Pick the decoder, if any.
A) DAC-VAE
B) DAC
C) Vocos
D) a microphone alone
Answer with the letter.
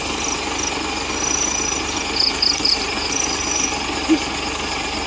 D